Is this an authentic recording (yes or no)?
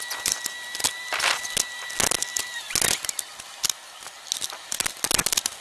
yes